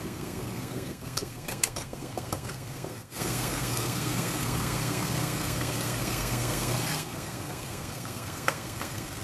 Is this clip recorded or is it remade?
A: remade